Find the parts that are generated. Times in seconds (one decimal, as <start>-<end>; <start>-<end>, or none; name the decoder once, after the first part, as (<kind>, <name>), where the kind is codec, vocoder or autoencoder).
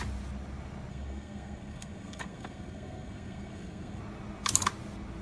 0.9-4.0 (codec, SNAC)